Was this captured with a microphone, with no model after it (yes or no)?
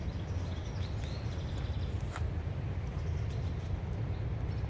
yes